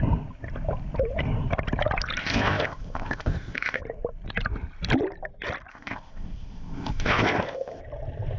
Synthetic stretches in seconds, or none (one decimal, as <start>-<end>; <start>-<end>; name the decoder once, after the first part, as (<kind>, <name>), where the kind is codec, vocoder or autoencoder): 2.2-3.8 (codec, ZipCodec); 5.7-7.8